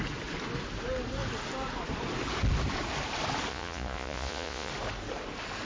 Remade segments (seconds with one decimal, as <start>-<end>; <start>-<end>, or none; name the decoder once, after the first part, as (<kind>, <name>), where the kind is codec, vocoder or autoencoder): 3.5-4.7 (vocoder, Vocos)